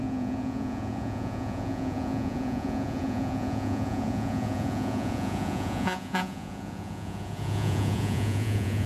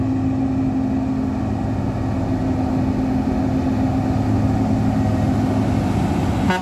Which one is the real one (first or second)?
second